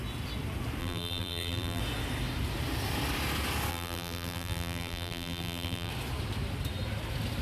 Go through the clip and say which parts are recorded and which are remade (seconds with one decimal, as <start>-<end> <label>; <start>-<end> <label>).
0.0-0.8 recorded; 0.8-1.8 remade; 1.8-3.7 recorded; 3.7-5.9 remade; 5.9-7.4 recorded